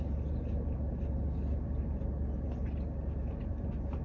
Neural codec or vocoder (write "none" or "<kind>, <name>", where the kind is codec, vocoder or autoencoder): none